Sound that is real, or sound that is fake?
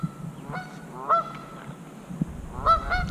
real